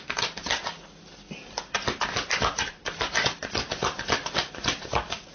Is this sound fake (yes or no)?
no